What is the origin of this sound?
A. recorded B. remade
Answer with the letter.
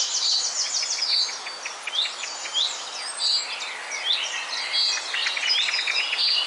A